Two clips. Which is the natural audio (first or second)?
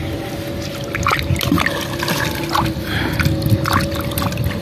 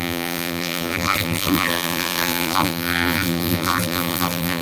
first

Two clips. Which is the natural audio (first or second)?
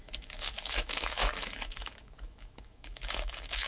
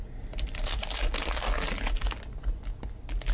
second